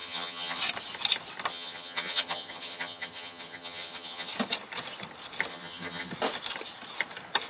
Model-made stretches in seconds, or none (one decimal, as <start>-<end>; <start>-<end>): 0.0-0.6; 1.5-4.3; 5.5-6.1